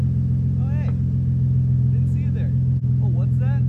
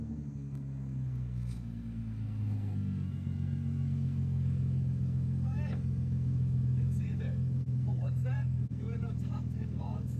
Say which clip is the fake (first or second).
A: second